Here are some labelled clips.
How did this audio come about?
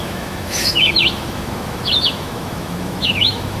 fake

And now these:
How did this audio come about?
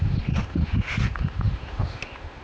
fake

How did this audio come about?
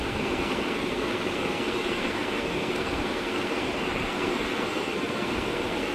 fake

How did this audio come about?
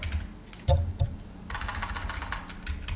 real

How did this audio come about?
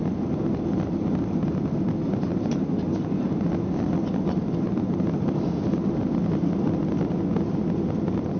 real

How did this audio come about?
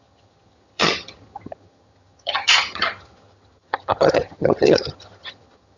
fake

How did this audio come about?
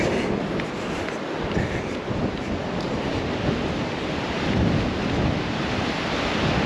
fake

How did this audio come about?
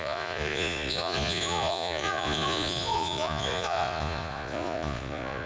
fake